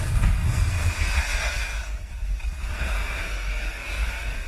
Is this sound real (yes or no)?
no